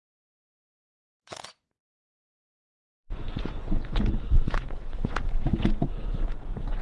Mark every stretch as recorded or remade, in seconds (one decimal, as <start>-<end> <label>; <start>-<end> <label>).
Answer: 0.0-6.8 remade